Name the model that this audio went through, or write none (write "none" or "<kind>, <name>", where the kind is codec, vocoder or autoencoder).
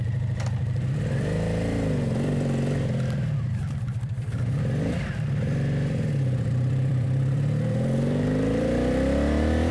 vocoder, BigVGAN v2